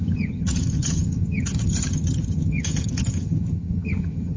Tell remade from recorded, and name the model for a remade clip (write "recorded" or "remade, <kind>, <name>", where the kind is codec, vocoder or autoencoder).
remade, vocoder, HiFi-GAN